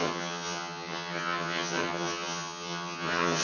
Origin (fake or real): fake